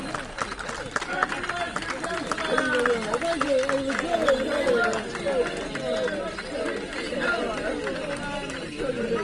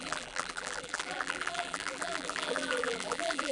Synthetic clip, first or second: second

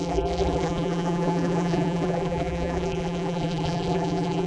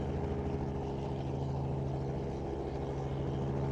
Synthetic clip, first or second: first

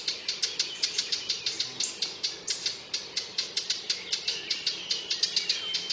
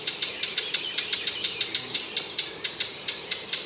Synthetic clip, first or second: second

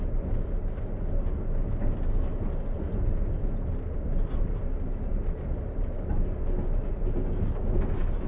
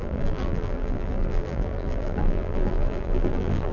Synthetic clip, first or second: second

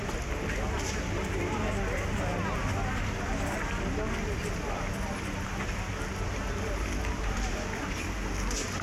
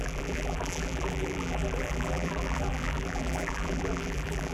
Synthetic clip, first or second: second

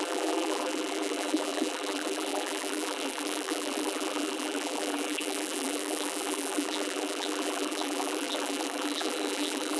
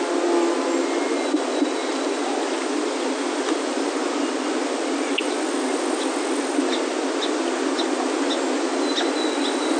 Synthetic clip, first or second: first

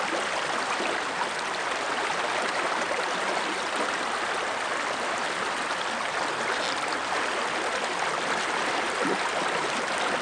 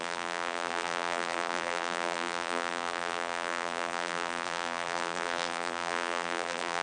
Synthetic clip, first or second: second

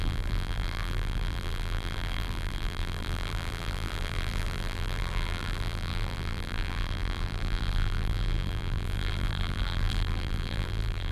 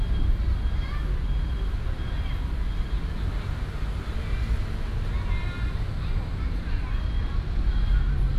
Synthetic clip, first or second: first